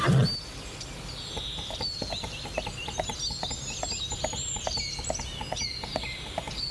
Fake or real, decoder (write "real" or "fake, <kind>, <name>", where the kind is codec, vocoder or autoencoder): real